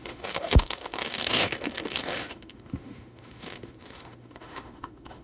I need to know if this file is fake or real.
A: fake